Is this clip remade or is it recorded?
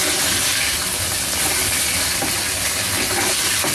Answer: recorded